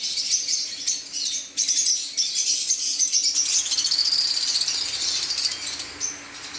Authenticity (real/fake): real